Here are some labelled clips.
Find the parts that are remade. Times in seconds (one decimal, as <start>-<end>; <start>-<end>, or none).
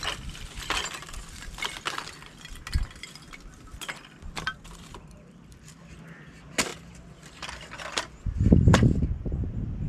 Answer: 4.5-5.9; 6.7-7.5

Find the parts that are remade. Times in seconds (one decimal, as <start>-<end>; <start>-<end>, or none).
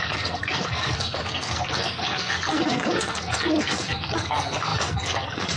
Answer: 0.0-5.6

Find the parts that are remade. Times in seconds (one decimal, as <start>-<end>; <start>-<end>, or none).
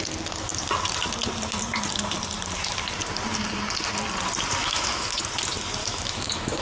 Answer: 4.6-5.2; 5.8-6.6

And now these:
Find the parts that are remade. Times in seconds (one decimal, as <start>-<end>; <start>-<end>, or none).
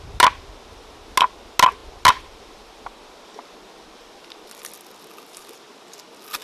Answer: none